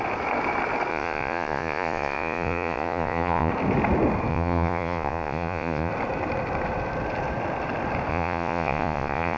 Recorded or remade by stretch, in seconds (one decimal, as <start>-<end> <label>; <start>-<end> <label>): 0.0-0.9 recorded; 0.9-3.5 remade; 3.5-4.3 recorded; 4.3-5.9 remade; 5.9-8.1 recorded; 8.1-9.4 remade